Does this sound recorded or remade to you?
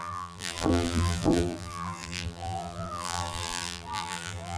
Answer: remade